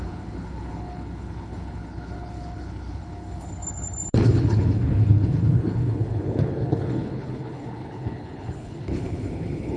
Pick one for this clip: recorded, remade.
remade